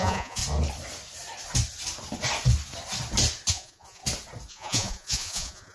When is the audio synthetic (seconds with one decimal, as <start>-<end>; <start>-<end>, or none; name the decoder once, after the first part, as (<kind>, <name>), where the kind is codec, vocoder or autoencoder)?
0.0-0.4 (vocoder, Vocos); 3.5-4.0; 4.5-5.7